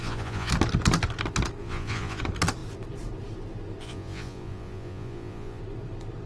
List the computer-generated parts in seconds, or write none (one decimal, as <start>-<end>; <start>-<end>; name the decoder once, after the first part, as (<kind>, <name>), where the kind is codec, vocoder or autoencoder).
0.0-0.5 (vocoder, Vocos); 1.6-2.2; 3.8-5.6